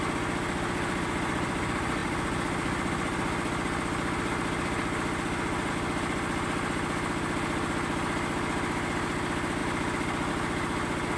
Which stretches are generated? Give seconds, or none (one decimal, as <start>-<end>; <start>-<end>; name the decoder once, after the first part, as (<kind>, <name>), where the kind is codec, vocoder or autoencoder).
none